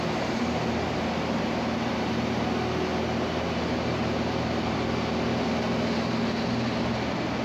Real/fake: real